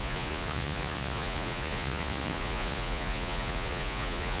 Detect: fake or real fake